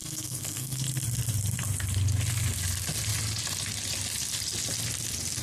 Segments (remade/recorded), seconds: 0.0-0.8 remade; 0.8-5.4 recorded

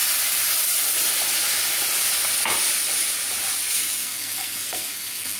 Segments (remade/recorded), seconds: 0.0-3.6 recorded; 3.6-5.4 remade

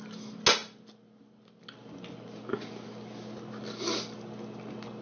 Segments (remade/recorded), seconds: 0.0-5.0 recorded

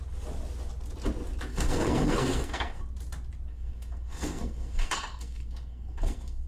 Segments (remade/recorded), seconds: 0.0-1.5 recorded; 1.5-2.8 remade; 2.8-3.5 recorded; 3.5-6.5 remade

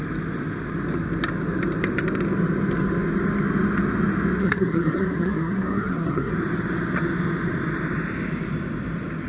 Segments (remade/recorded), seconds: 0.0-4.4 recorded; 4.4-6.3 remade; 6.3-9.3 recorded

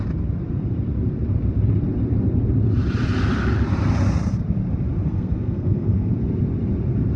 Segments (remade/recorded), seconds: 0.0-5.1 recorded; 5.1-6.1 remade; 6.1-7.2 recorded

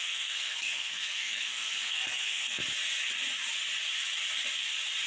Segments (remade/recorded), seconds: 0.0-2.6 remade; 2.6-5.1 recorded

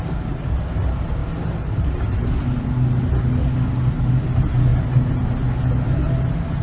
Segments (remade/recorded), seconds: 0.0-6.6 recorded